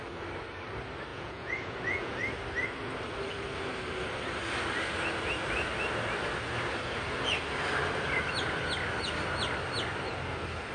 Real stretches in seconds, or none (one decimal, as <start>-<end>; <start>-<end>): 0.0-1.1; 2.1-10.7